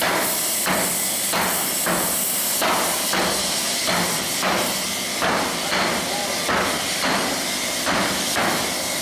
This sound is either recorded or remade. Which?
remade